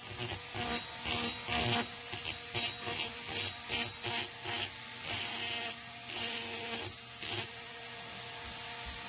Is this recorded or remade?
recorded